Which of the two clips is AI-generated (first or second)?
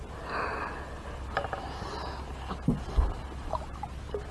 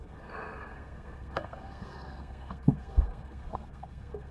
second